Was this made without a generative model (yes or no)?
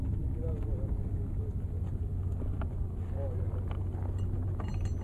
yes